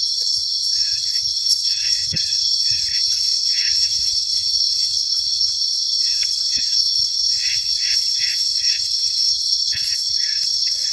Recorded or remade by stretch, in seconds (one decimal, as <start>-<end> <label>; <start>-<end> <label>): 0.0-10.9 remade